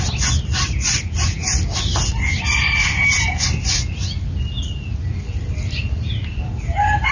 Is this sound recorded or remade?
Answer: recorded